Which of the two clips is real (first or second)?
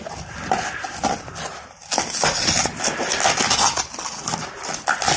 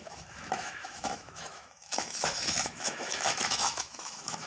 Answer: first